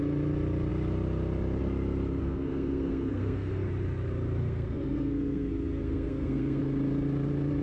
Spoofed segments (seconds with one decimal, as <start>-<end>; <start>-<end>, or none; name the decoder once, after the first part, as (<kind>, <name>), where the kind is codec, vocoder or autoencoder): 2.2-3.7 (codec, SNAC); 4.4-6.6